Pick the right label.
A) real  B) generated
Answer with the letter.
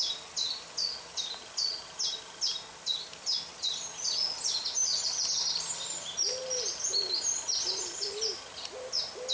A